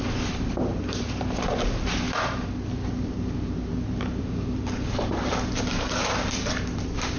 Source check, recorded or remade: remade